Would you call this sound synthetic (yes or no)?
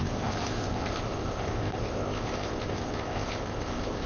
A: yes